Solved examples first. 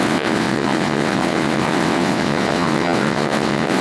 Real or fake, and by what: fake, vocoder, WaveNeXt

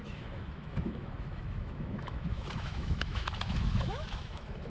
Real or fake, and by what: fake, autoencoder, DAC-VAE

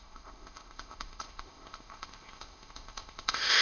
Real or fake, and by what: fake, codec, ZipCodec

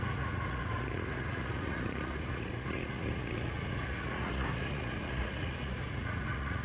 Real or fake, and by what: fake, vocoder, Vocos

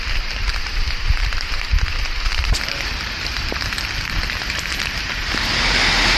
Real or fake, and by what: fake, vocoder, BigVGAN v2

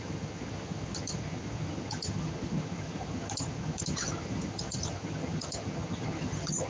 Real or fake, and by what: fake, vocoder, HiFi-GAN